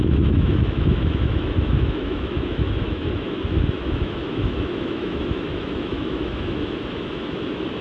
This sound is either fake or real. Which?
fake